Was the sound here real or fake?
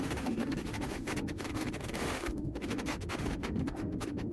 fake